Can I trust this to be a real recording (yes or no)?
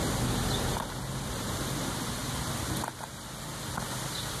yes